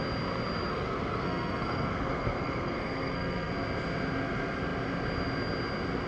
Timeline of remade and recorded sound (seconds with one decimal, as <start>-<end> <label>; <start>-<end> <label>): 0.0-0.7 recorded; 0.7-3.5 remade; 3.5-6.1 recorded